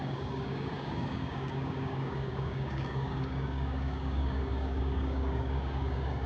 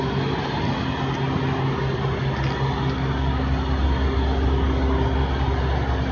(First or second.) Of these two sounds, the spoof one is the first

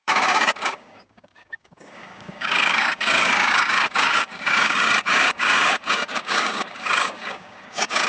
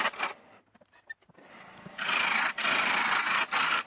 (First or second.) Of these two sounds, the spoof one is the first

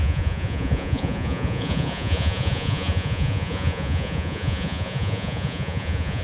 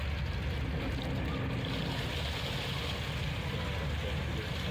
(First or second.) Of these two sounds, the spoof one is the first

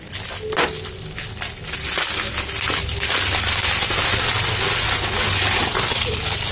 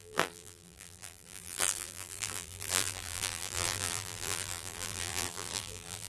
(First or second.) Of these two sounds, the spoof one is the second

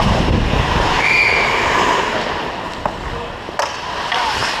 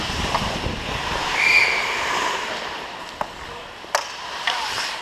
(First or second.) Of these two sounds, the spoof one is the second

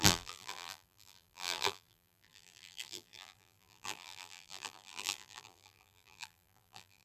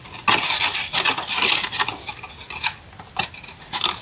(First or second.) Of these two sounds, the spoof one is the first